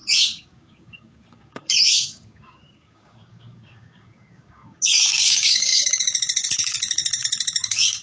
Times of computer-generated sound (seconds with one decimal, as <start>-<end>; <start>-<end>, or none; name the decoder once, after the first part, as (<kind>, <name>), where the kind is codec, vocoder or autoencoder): 0.0-8.0 (codec, DAC)